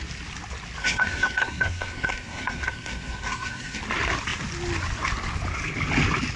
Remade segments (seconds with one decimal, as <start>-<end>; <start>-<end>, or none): 0.8-3.8